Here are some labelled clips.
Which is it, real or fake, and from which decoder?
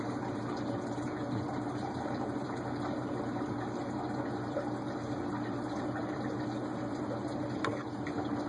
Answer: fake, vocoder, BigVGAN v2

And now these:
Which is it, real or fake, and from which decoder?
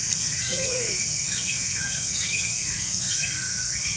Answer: fake, codec, SNAC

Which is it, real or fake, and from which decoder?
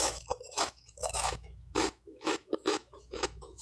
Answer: fake, autoencoder, DAC-VAE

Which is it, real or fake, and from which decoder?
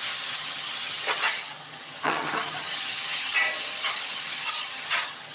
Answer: fake, vocoder, HiFi-GAN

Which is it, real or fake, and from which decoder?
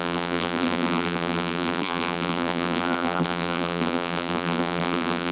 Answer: fake, vocoder, BigVGAN v2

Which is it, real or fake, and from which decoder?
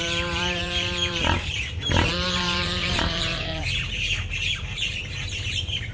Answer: fake, vocoder, BigVGAN v2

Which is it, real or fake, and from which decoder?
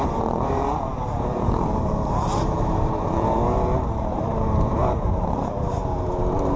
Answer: fake, vocoder, BigVGAN v2